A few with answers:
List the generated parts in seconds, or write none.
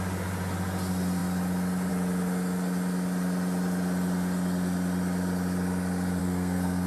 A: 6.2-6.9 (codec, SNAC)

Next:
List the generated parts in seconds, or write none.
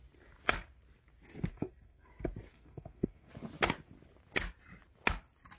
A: 1.5-2.1 (codec, SNAC); 2.5-3.3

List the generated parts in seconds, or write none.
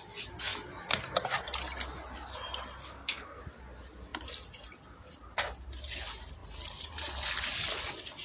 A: 2.8-3.4 (codec, SNAC)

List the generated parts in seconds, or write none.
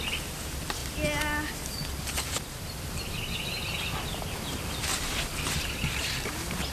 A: none